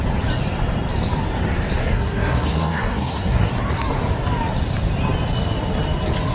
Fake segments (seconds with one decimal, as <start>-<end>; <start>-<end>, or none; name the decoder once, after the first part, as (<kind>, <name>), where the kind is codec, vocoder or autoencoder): 1.8-3.5 (codec, SNAC)